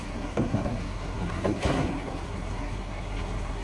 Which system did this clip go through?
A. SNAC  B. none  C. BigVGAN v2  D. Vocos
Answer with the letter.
A